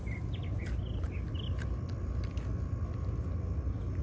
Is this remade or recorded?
recorded